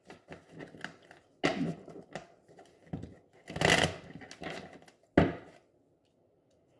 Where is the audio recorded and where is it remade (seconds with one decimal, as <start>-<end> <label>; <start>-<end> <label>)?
0.0-6.8 recorded